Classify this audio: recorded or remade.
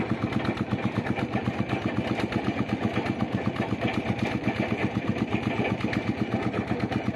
recorded